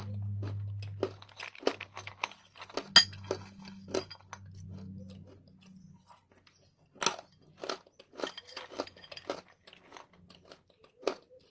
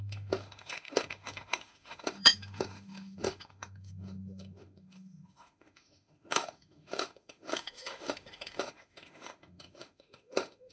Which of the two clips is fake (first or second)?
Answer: second